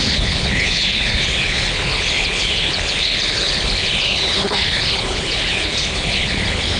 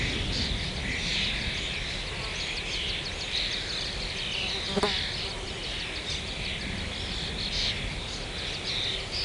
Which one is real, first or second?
second